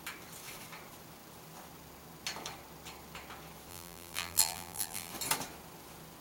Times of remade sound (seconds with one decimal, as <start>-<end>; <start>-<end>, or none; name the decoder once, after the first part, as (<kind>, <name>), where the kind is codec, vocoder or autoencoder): 3.7-5.1 (vocoder, BigVGAN v2)